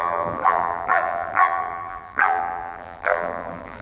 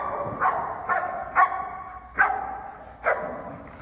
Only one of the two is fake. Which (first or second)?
first